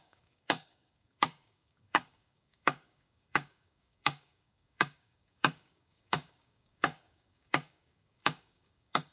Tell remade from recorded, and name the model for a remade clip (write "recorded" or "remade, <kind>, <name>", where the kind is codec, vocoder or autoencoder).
remade, codec, DAC